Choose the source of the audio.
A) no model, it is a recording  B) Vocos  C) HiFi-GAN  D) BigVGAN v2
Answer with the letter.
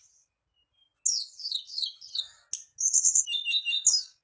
A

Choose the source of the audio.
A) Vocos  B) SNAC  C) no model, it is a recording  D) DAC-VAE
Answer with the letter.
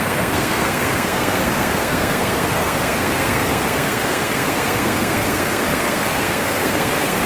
B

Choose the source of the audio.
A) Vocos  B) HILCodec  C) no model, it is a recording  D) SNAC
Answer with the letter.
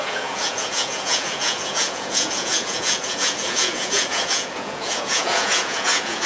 A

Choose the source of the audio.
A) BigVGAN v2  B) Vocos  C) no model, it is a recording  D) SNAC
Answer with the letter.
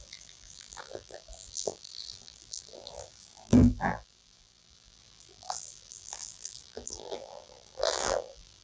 A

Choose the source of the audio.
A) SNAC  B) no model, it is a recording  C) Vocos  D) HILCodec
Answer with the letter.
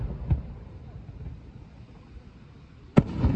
B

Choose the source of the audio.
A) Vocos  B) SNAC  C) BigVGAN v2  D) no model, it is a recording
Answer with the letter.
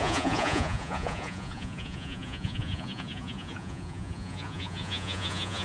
A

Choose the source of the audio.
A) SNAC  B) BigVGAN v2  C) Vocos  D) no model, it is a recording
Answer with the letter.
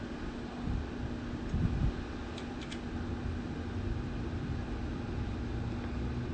D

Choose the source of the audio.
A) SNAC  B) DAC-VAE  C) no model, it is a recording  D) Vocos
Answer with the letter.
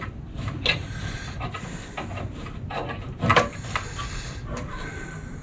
C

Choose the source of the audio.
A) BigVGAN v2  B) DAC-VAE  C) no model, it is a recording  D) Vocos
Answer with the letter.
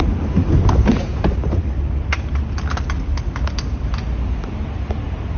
C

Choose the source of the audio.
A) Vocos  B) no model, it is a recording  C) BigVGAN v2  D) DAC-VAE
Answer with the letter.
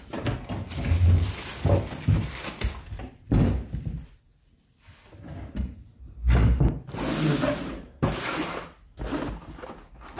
B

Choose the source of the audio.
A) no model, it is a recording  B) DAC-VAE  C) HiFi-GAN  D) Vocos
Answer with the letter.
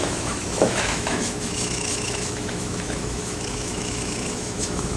B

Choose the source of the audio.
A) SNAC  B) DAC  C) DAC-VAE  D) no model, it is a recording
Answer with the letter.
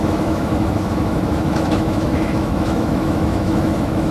C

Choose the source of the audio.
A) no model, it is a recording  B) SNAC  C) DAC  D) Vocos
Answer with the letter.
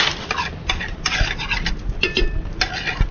A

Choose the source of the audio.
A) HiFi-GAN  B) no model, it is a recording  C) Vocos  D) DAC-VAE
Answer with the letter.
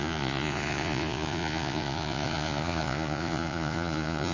C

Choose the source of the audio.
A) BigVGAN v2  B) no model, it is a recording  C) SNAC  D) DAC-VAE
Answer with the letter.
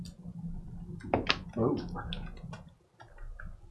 B